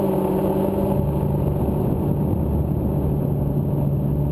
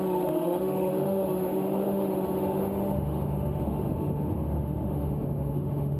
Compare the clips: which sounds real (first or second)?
first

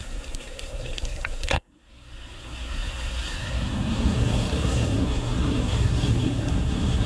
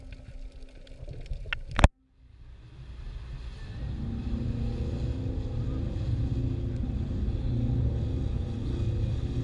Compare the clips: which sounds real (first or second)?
second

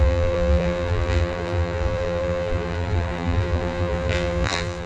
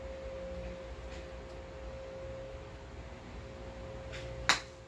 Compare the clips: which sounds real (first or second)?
second